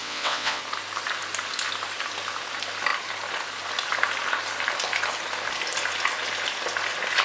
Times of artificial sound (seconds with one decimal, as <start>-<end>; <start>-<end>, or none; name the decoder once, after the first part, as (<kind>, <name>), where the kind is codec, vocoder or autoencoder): 0.0-0.6 (vocoder, WaveNeXt)